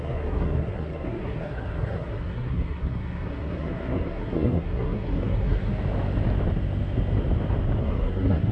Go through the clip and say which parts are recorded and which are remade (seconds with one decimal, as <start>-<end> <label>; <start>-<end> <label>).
0.0-5.7 remade; 5.7-7.8 recorded; 7.8-8.5 remade